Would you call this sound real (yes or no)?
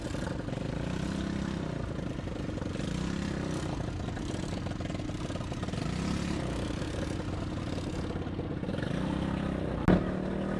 yes